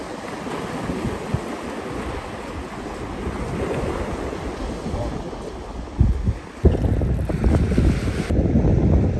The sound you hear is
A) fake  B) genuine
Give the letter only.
B